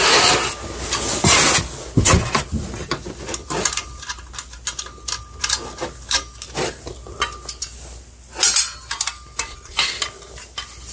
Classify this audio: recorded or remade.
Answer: recorded